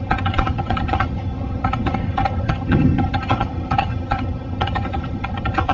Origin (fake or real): fake